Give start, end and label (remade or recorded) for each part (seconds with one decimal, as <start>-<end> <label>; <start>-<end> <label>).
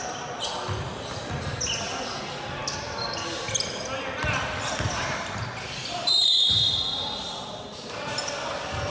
0.0-8.9 recorded